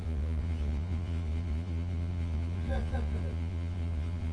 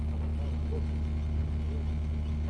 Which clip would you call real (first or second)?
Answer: second